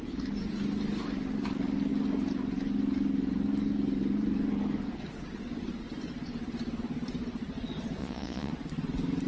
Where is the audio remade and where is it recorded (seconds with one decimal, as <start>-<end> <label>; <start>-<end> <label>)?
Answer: 0.0-8.0 recorded; 8.0-8.5 remade; 8.5-9.3 recorded